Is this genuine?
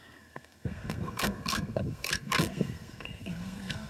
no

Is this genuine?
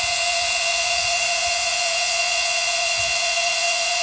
no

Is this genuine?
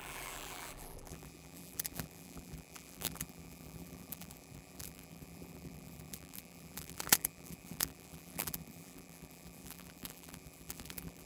no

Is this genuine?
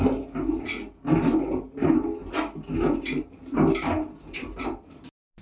yes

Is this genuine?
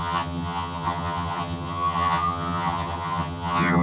no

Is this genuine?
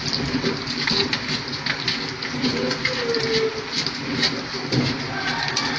yes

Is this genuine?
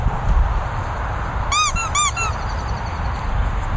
yes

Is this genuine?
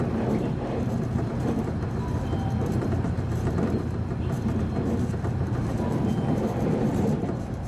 no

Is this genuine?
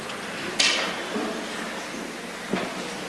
yes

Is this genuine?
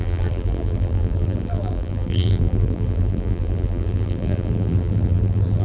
no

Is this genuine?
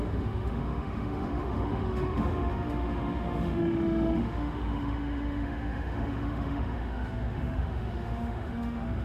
no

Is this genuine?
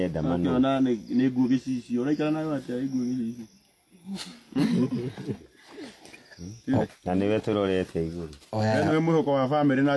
yes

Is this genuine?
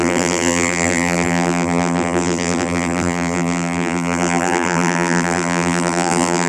no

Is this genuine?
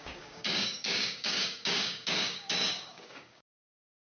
no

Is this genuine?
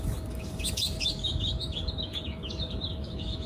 no